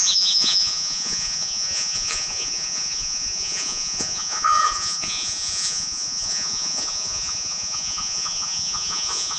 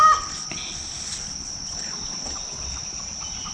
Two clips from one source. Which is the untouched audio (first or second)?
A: second